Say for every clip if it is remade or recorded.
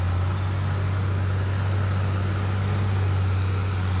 recorded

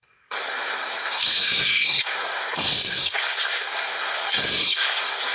remade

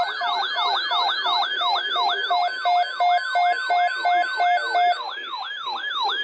recorded